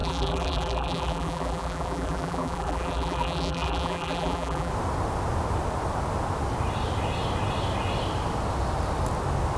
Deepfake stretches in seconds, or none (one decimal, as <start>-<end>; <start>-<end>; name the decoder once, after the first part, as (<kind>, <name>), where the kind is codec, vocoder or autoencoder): 0.0-4.7 (vocoder, BigVGAN v2)